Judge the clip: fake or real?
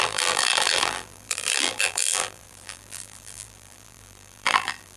fake